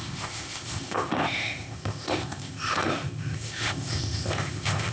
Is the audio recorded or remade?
remade